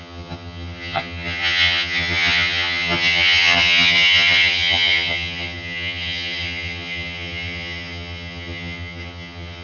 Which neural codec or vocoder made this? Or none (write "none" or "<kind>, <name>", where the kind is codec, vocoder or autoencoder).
vocoder, HiFi-GAN